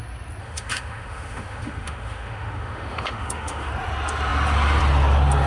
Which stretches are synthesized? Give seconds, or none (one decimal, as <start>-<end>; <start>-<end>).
0.4-3.7